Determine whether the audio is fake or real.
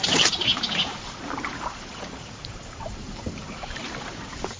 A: fake